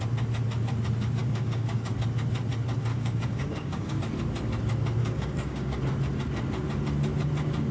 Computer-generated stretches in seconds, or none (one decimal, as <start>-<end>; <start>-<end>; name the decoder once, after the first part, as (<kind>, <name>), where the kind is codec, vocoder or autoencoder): 1.2-1.9 (codec, DAC); 2.9-4.0; 5.0-5.8

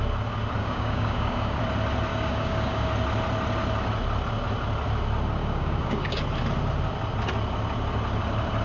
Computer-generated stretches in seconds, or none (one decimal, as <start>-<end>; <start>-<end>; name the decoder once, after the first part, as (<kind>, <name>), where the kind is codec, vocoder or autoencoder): 0.6-1.6 (codec, DAC); 2.1-2.9; 5.4-6.2

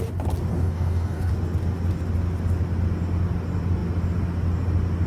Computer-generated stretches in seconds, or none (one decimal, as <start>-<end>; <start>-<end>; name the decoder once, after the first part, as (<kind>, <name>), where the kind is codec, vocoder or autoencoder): 0.5-1.3 (codec, DAC)

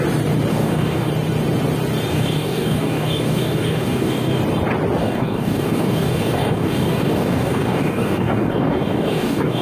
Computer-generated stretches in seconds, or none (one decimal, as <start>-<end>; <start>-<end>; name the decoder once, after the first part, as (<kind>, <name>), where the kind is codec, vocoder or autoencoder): 0.5-1.1 (codec, DAC); 2.1-4.4; 5.0-9.6

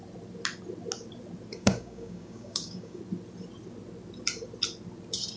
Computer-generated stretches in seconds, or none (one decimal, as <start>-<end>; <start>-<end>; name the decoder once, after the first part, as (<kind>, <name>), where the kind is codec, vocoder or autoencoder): 1.5-3.0 (codec, DAC)

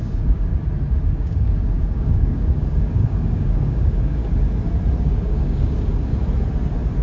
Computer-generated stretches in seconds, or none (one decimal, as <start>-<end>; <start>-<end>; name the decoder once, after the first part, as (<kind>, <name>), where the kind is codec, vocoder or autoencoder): 0.0-0.5 (codec, DAC); 1.2-4.2; 5.0-6.1